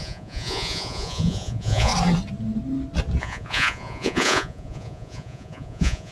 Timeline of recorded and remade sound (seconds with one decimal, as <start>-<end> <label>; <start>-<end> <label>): 0.0-1.9 remade; 1.9-3.2 recorded; 3.2-6.1 remade